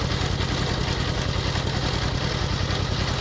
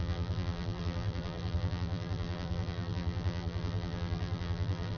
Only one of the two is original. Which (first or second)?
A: first